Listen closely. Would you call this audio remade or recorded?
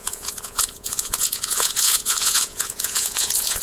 remade